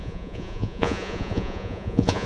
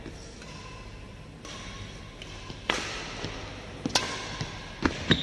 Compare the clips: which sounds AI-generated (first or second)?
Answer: first